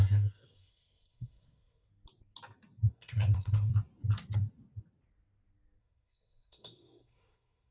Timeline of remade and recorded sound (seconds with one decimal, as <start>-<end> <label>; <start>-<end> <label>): 0.0-1.9 remade; 1.9-2.9 recorded; 2.9-3.7 remade; 3.7-5.8 recorded; 5.8-7.7 remade